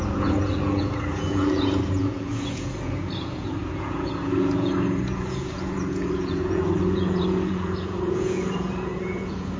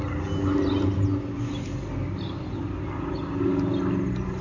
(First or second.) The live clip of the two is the second